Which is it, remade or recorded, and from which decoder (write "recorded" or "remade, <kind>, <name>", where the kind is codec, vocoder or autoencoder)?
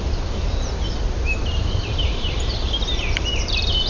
remade, vocoder, BigVGAN v2